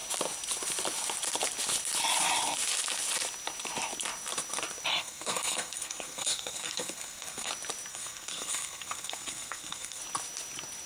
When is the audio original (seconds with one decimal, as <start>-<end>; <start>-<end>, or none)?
0.0-4.9; 7.5-7.9; 10.0-10.9